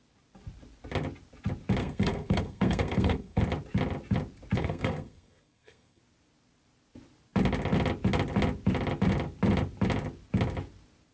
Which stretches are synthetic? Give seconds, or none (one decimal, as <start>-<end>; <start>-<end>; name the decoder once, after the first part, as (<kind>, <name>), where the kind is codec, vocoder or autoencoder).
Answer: 1.8-3.4 (codec, SNAC); 4.6-6.0